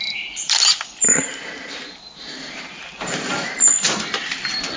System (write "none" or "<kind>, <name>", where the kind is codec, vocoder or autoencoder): vocoder, BigVGAN v2